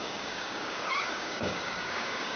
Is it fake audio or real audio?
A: fake